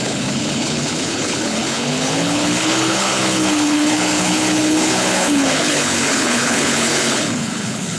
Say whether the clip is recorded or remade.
remade